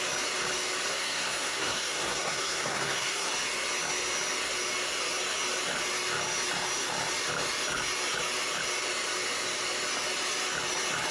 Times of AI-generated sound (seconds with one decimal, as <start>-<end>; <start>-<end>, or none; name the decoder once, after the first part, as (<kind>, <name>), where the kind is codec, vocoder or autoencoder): 0.9-3.3 (codec, SNAC)